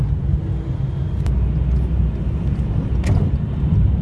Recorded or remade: recorded